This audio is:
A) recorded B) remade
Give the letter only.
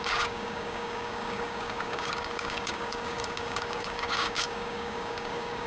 B